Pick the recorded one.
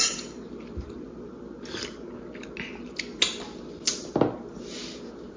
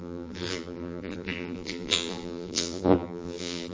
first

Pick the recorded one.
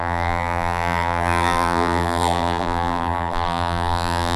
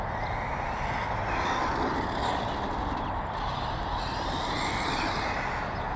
second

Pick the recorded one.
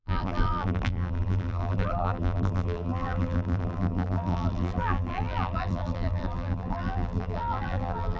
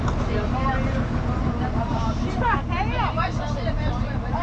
second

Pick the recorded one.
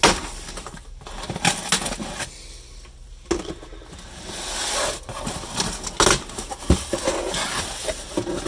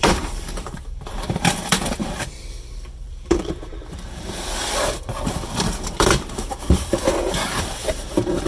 first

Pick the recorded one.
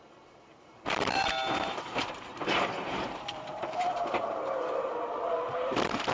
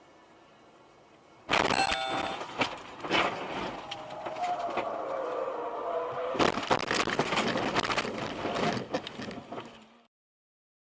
second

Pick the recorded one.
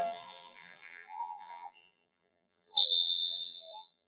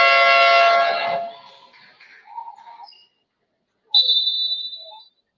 second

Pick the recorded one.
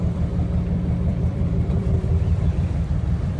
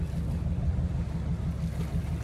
second